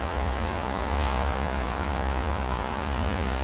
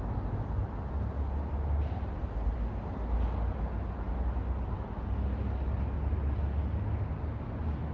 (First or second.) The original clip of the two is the second